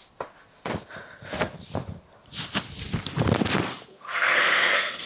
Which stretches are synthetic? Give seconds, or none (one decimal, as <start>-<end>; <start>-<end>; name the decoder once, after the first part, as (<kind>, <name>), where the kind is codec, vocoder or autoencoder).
3.9-5.1 (codec, SNAC)